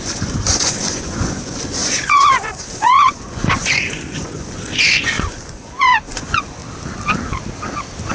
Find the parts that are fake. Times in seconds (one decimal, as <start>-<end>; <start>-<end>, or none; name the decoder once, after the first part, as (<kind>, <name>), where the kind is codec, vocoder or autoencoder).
0.0-6.6 (vocoder, Vocos)